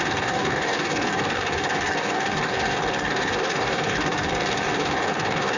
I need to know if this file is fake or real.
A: fake